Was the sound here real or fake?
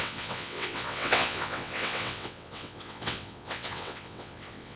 fake